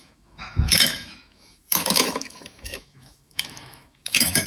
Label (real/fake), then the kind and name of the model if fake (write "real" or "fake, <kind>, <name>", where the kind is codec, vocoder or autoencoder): fake, autoencoder, DAC-VAE